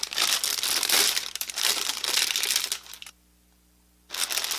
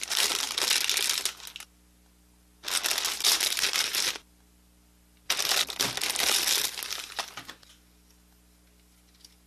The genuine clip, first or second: second